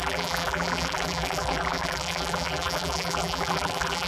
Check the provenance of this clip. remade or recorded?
remade